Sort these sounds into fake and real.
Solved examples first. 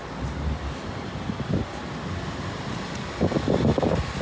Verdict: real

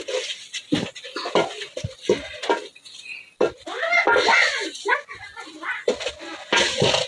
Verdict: real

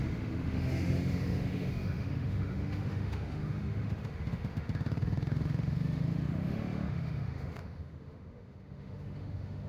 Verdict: fake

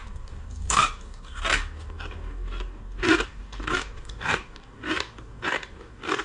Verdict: fake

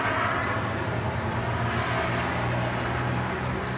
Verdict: real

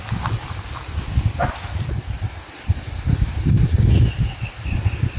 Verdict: fake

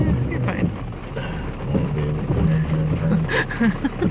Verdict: real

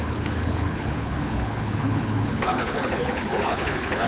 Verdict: fake